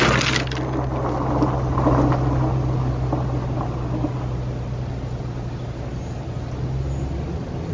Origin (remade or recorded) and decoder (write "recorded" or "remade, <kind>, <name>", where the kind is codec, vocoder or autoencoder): recorded